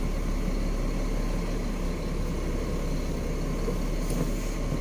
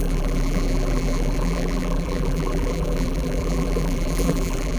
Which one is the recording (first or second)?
first